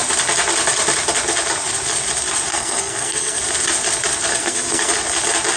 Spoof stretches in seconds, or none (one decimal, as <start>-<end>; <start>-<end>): 2.5-3.4; 4.3-4.9